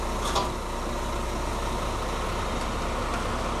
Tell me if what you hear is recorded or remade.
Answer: recorded